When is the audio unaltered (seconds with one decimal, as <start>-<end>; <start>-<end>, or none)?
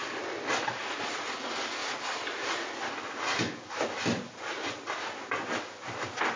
0.0-6.4